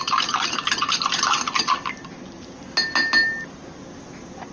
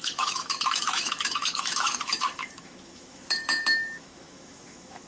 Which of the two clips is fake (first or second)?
second